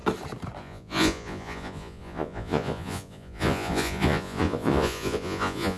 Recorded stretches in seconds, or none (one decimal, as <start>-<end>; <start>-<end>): 0.0-0.6